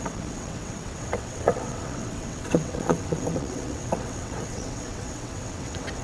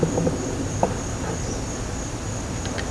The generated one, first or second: first